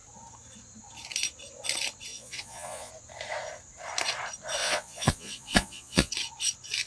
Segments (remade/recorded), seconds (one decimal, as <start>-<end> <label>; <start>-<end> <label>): 0.0-2.1 recorded; 2.1-2.9 remade; 2.9-4.6 recorded; 4.6-6.1 remade; 6.1-6.9 recorded